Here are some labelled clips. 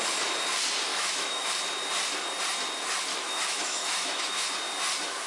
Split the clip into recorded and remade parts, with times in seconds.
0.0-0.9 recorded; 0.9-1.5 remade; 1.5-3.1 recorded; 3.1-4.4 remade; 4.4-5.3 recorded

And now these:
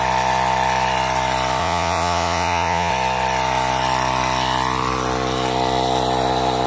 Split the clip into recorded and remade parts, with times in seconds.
0.0-1.6 recorded; 1.6-2.9 remade; 2.9-6.7 recorded

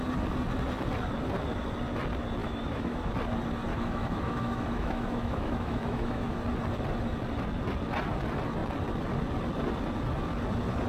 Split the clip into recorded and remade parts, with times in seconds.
0.0-2.4 recorded; 2.4-3.1 remade; 3.1-3.7 recorded; 3.7-6.3 remade; 6.3-10.9 recorded

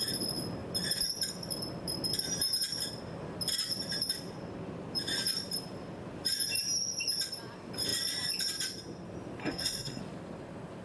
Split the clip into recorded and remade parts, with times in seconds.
0.0-9.4 recorded; 9.4-10.0 remade; 10.0-10.8 recorded

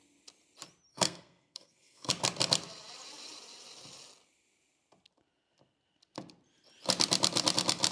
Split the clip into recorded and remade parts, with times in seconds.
0.0-0.9 recorded; 0.9-2.1 remade; 2.1-7.9 recorded

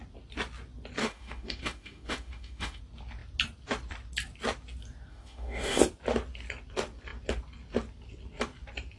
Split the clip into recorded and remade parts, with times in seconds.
0.0-1.0 recorded; 1.0-2.8 remade; 2.8-5.1 recorded; 5.1-5.8 remade; 5.8-9.0 recorded

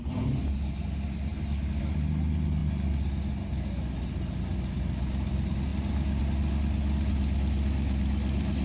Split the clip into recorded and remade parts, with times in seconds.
0.0-8.6 recorded